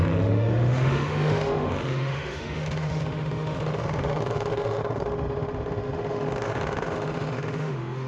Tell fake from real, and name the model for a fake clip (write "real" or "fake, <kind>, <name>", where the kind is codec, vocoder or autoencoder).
fake, autoencoder, DAC-VAE